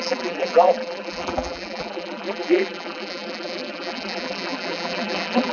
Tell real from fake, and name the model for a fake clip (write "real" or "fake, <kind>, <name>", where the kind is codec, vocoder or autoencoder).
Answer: fake, vocoder, BigVGAN v2